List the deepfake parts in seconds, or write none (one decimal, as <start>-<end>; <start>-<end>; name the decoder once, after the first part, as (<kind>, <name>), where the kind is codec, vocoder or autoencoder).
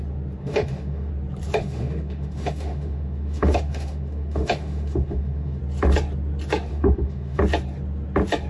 0.4-1.1 (autoencoder, DAC-VAE); 1.6-5.6; 6.7-7.4